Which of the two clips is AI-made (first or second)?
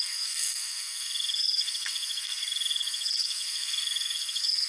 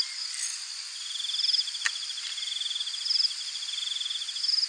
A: first